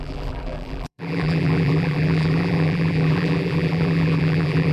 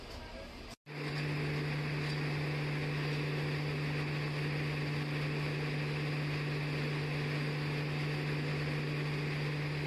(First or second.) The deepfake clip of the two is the first